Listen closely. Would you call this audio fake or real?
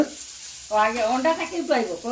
real